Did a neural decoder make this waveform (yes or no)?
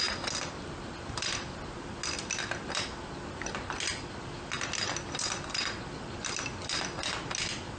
no